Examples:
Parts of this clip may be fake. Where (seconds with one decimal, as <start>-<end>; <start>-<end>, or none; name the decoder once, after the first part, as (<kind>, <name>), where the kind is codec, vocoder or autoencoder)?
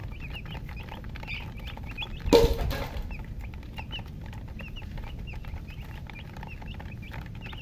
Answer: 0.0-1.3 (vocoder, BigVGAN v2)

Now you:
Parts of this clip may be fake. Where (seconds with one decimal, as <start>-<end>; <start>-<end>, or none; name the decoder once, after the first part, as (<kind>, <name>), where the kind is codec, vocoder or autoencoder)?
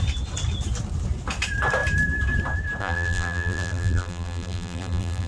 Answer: 2.8-5.3 (vocoder, BigVGAN v2)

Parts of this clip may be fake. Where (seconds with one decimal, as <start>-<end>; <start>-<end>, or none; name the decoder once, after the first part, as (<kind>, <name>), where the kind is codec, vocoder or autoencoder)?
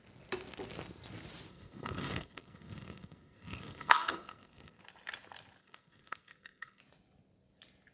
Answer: 1.5-4.8 (codec, SNAC); 5.6-6.8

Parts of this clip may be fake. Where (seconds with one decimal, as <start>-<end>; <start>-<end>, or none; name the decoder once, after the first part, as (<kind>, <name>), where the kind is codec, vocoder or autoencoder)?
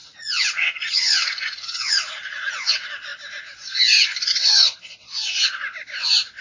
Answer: 0.0-2.5 (vocoder, Vocos)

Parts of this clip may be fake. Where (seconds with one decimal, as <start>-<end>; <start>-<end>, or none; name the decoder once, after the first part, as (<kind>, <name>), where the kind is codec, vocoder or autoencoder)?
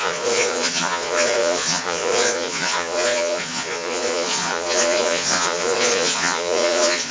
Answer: 0.0-7.1 (vocoder, Vocos)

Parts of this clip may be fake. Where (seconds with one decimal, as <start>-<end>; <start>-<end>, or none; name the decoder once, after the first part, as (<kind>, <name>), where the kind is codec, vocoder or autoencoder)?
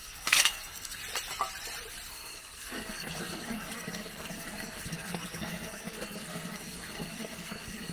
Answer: 0.0-1.0 (codec, SNAC); 2.1-7.9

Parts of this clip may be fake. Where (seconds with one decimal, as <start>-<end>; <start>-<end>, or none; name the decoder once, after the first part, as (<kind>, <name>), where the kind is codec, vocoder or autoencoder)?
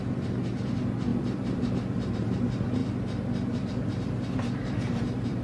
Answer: 0.0-5.4 (vocoder, BigVGAN v2)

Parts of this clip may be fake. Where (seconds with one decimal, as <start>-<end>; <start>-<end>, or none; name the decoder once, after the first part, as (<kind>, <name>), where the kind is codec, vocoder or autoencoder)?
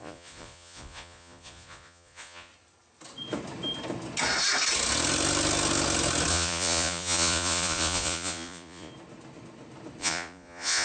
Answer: 0.0-2.5 (vocoder, Vocos); 6.3-8.9; 10.0-10.8